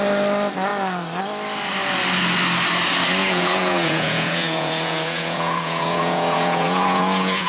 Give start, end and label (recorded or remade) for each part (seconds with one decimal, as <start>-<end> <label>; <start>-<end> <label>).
0.0-3.2 recorded; 3.2-7.5 remade